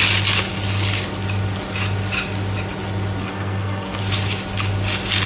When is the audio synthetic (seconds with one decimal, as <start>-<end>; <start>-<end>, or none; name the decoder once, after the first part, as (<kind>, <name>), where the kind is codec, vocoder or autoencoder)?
3.2-4.0 (codec, SNAC)